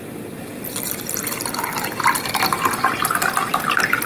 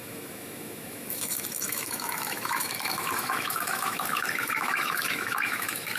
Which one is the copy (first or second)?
second